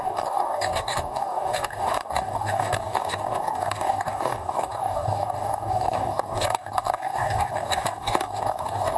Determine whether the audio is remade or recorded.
remade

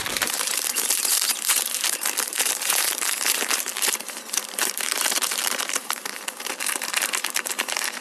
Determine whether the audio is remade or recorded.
remade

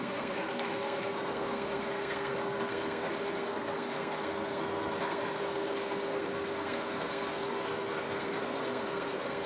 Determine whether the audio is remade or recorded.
remade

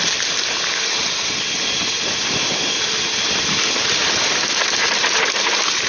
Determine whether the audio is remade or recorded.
recorded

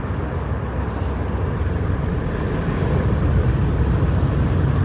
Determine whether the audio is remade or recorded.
recorded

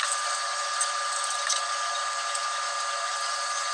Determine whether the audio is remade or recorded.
recorded